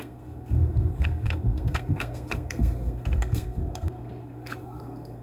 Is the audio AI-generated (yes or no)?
yes